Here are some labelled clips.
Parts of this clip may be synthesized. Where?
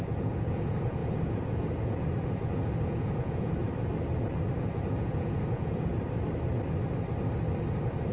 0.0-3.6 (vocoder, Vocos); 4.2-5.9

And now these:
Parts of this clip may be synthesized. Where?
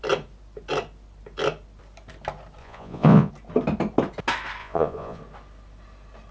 2.6-3.3 (vocoder, Vocos); 4.6-5.2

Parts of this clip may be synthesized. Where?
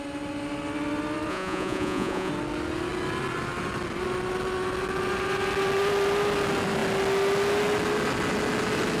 1.3-2.3 (vocoder, Vocos)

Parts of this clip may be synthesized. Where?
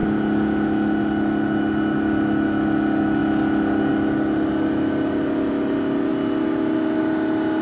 none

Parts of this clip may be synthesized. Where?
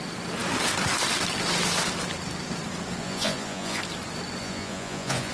3.0-3.8 (vocoder, Vocos); 4.4-5.3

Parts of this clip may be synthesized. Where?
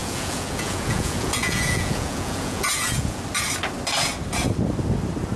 0.0-3.2 (vocoder, Vocos)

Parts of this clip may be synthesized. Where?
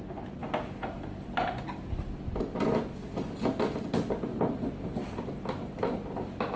none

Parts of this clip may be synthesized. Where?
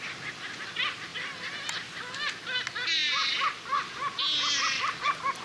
none